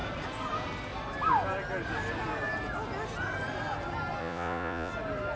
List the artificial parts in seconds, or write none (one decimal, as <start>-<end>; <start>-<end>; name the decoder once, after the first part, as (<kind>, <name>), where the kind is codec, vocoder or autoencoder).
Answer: 4.2-4.9 (vocoder, Vocos)